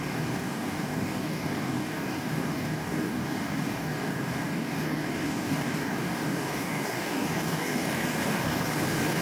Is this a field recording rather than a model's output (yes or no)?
no